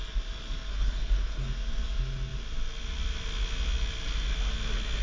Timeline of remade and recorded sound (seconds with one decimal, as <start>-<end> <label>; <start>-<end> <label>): 0.0-0.7 recorded; 0.7-1.5 remade; 1.5-5.0 recorded